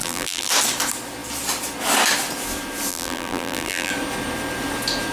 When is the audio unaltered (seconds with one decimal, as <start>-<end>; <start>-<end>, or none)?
0.5-2.9; 3.9-5.1

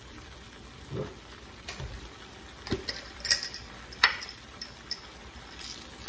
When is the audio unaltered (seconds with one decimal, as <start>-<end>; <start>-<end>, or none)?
0.0-6.1